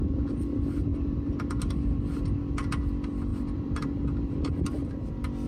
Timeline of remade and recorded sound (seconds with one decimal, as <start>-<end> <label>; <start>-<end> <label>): 0.0-3.3 recorded; 3.3-5.1 remade; 5.1-5.5 recorded